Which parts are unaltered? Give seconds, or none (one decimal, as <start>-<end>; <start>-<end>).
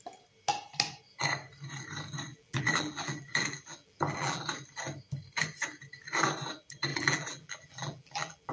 0.0-2.3; 4.4-6.9